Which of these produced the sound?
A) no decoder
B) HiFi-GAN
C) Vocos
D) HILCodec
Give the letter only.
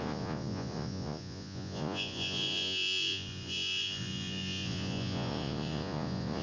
C